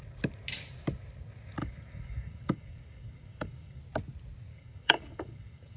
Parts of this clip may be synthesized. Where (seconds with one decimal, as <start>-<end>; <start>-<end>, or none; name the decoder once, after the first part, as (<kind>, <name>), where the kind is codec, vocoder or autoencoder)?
1.6-3.8 (codec, DAC); 4.5-5.8